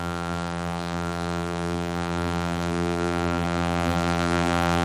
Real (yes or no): no